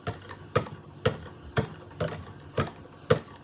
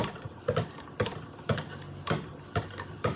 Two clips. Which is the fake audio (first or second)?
second